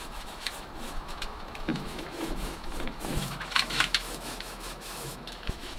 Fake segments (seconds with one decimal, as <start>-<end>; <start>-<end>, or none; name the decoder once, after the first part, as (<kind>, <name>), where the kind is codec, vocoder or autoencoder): 0.0-5.8 (autoencoder, DAC-VAE)